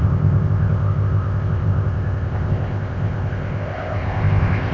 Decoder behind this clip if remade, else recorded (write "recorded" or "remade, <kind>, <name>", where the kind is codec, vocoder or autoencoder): remade, codec, ZipCodec